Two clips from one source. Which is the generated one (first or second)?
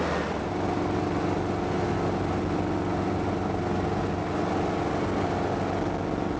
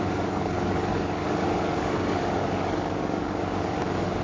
second